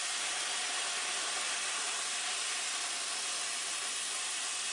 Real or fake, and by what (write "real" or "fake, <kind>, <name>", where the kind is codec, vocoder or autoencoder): real